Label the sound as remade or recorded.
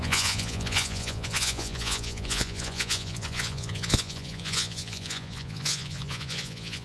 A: remade